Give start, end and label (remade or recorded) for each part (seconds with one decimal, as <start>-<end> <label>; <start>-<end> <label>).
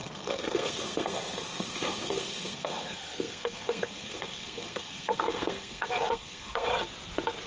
0.0-6.7 remade; 6.7-7.5 recorded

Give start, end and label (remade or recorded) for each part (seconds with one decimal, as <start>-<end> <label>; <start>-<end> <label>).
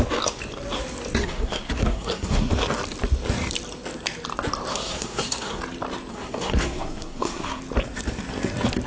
0.0-1.2 recorded; 1.2-2.5 remade; 2.5-4.7 recorded; 4.7-5.6 remade; 5.6-6.1 recorded; 6.1-7.6 remade; 7.6-8.9 recorded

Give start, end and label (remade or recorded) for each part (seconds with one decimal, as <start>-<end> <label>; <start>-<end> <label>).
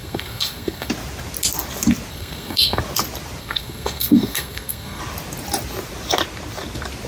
0.0-0.9 remade; 0.9-2.1 recorded; 2.1-2.8 remade; 2.8-3.4 recorded; 3.4-5.0 remade; 5.0-7.1 recorded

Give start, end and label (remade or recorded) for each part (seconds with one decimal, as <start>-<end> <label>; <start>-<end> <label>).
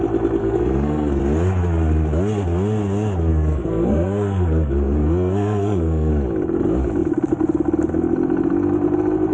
0.0-0.4 recorded; 0.4-1.2 remade; 1.2-3.3 recorded; 3.3-6.1 remade; 6.1-9.3 recorded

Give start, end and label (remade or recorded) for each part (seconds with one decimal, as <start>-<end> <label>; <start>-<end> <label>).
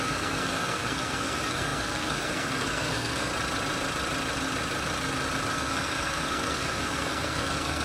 0.0-3.3 remade; 3.3-5.5 recorded; 5.5-7.8 remade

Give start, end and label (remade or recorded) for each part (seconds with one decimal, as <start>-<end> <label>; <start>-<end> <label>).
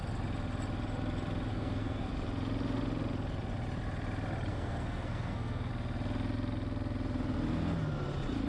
0.0-1.5 recorded; 1.5-2.1 remade; 2.1-4.5 recorded; 4.5-5.7 remade; 5.7-8.5 recorded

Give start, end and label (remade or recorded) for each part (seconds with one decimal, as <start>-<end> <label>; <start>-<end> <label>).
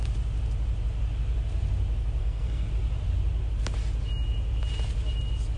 0.0-2.2 recorded; 2.2-2.7 remade; 2.7-5.6 recorded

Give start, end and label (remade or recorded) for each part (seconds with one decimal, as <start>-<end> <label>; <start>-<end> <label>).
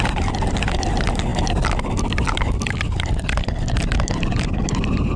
0.0-5.2 recorded